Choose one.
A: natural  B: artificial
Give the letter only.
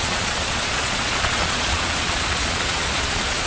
B